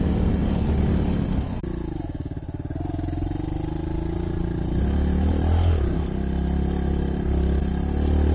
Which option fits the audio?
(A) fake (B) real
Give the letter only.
B